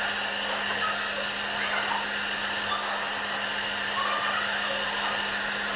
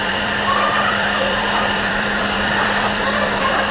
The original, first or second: first